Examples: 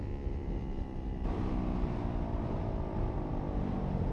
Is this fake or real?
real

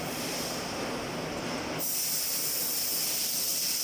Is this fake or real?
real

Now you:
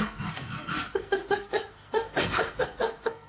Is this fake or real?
fake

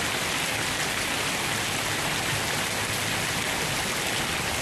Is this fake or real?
real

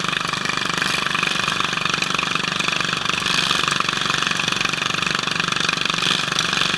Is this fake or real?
real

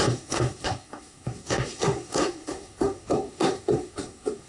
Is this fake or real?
fake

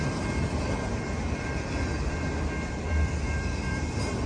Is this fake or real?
fake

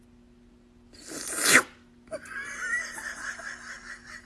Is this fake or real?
real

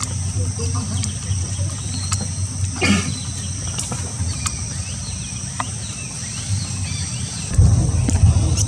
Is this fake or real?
real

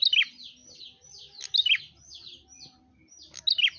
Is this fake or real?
real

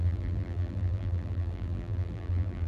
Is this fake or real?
fake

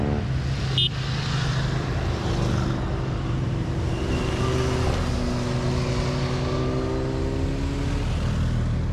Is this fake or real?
real